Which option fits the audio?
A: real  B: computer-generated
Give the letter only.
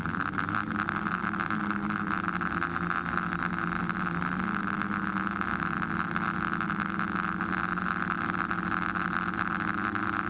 A